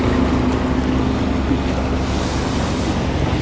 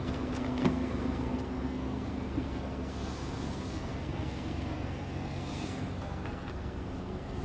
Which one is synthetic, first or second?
second